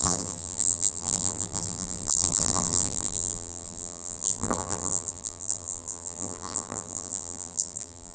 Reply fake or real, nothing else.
fake